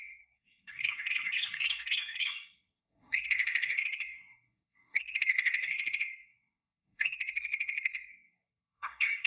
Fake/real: fake